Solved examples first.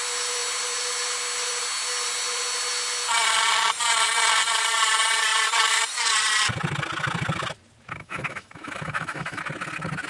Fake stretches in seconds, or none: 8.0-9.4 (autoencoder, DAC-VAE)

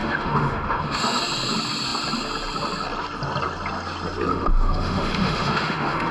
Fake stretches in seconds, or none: 0.0-1.2 (autoencoder, DAC-VAE); 4.3-6.1

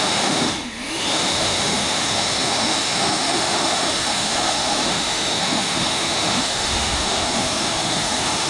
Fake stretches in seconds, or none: 0.0-8.5 (autoencoder, DAC-VAE)

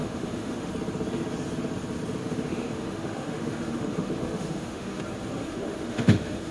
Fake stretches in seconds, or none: 0.0-0.7 (autoencoder, DAC-VAE); 2.2-5.0; 5.4-6.5

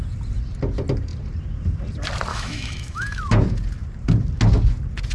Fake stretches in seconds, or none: 2.3-3.2 (autoencoder, DAC-VAE)

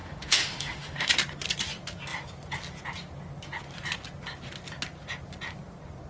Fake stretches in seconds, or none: 0.0-1.1 (autoencoder, DAC-VAE)